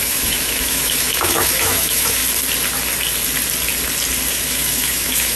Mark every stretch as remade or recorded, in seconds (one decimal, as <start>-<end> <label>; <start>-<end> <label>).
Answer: 0.0-2.2 remade; 2.2-4.3 recorded; 4.3-5.4 remade